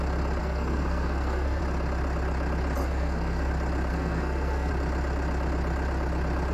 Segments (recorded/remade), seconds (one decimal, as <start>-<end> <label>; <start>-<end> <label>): 0.0-0.4 recorded; 0.4-1.6 remade; 1.6-2.8 recorded; 2.8-3.5 remade; 3.5-3.9 recorded; 3.9-4.7 remade; 4.7-6.5 recorded